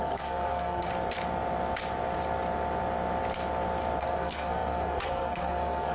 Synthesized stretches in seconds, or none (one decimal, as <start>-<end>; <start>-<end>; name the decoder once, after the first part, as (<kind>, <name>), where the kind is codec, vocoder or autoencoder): 0.0-0.9 (codec, SNAC); 4.0-5.9